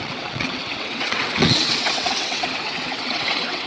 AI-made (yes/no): yes